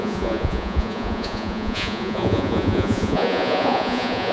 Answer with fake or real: fake